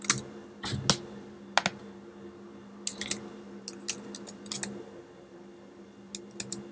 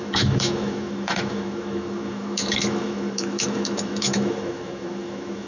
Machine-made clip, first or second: second